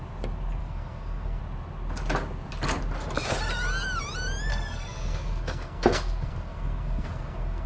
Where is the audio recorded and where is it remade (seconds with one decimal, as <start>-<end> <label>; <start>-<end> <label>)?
0.0-0.6 recorded; 0.6-1.4 remade; 1.4-4.5 recorded; 4.5-7.7 remade